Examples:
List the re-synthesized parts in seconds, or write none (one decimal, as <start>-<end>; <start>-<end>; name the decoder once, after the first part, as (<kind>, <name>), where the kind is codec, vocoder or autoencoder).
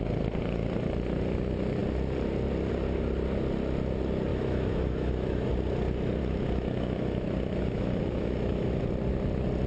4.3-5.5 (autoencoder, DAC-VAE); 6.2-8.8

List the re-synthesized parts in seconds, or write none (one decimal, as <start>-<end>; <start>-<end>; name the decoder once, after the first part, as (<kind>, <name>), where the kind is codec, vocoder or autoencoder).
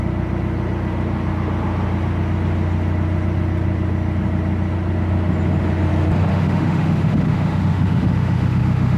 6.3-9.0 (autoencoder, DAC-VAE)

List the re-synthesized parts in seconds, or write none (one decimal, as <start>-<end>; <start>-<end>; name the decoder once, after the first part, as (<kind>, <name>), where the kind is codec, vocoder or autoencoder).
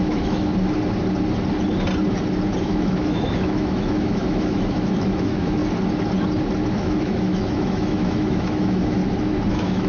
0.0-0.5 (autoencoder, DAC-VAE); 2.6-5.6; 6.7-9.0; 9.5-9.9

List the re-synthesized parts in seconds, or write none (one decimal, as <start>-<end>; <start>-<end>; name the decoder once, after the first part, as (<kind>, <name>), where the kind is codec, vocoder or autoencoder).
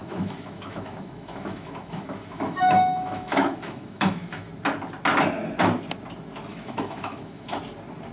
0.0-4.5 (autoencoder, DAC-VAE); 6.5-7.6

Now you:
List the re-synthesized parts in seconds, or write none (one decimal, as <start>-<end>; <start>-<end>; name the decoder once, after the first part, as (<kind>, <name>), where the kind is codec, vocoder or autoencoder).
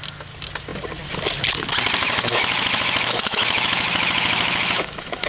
2.0-5.3 (autoencoder, DAC-VAE)